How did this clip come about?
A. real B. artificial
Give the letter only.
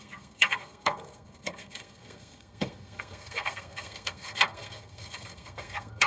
B